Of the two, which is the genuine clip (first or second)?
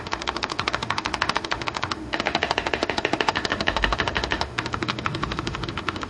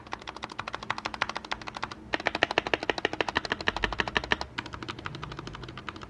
second